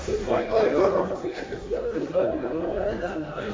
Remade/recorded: remade